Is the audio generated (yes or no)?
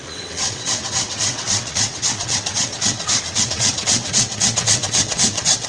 yes